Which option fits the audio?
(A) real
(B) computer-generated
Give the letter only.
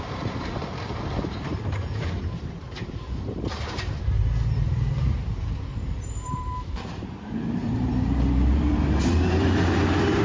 B